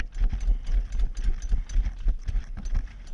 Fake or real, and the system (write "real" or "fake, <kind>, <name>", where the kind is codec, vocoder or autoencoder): real